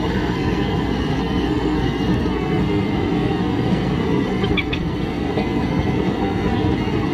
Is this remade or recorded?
remade